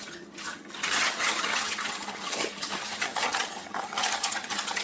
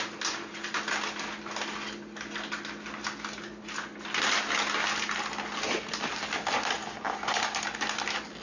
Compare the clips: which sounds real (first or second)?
second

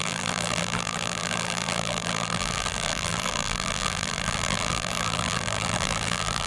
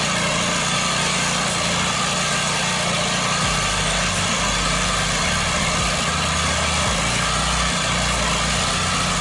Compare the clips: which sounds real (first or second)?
second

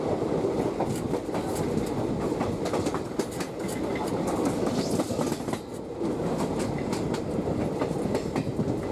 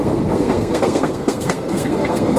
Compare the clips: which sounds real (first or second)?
first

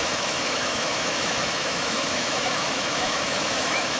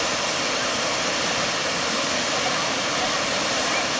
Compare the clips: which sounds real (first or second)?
second